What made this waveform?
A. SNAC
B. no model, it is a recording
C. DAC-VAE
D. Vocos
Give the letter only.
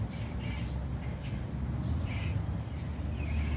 B